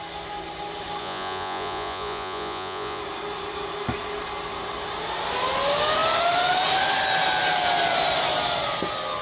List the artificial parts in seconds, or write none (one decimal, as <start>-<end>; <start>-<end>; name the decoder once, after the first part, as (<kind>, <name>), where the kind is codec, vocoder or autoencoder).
1.0-3.0 (vocoder, Vocos)